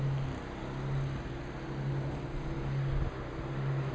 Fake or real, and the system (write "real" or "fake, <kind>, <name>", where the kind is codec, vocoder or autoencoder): real